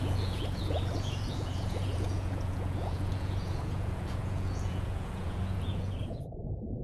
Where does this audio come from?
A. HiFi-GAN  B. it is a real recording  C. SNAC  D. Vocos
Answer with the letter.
D